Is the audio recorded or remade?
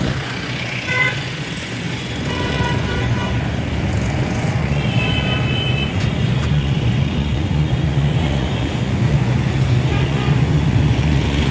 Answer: remade